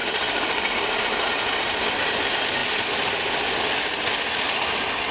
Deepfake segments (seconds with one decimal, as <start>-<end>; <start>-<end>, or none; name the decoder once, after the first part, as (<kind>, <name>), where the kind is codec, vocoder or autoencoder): 0.0-1.3 (vocoder, BigVGAN v2); 2.6-3.5